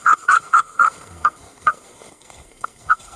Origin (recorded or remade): remade